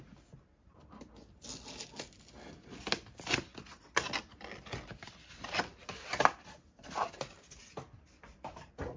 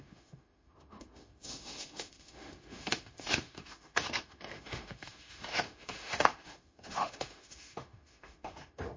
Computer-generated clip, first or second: second